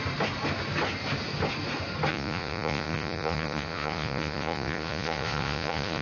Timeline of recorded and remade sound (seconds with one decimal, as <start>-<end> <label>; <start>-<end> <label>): 0.0-2.1 recorded; 2.1-6.0 remade